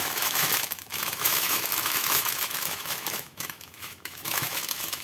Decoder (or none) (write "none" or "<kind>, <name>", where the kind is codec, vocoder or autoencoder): autoencoder, DAC-VAE